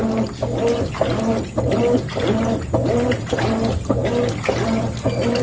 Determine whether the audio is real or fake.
real